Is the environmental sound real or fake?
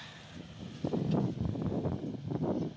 real